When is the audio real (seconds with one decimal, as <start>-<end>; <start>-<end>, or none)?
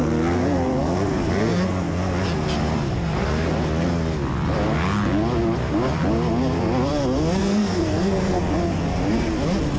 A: 0.0-7.4; 8.4-9.8